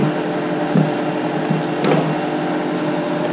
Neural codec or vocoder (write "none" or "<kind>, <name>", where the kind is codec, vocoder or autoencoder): none